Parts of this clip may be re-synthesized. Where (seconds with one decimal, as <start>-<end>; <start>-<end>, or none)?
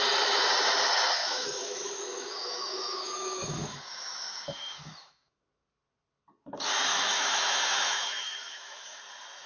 1.2-5.4; 6.9-9.0